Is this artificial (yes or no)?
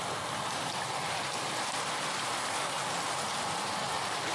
no